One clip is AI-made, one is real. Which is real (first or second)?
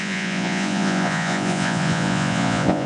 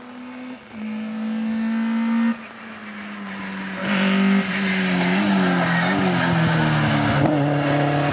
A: second